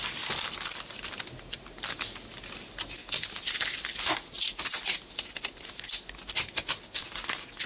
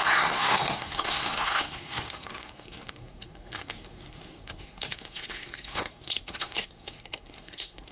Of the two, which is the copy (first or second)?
second